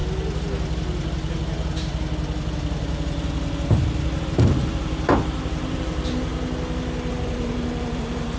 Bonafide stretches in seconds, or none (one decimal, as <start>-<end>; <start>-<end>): 0.0-4.2; 6.3-7.1